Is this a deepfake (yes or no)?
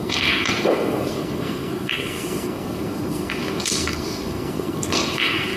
yes